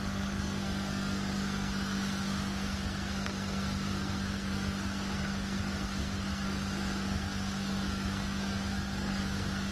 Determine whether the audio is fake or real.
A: fake